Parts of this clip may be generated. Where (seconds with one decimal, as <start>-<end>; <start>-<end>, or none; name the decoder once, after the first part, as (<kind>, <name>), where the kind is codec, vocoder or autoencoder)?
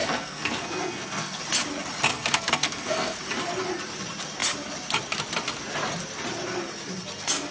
0.0-1.4 (codec, SNAC); 2.1-3.2